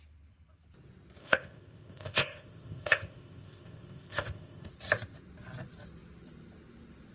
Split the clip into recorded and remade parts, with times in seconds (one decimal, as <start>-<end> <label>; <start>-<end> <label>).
0.0-1.2 recorded; 1.2-4.7 remade; 4.7-7.1 recorded